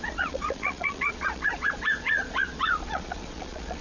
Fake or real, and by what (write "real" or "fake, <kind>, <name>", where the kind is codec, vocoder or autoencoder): fake, vocoder, Vocos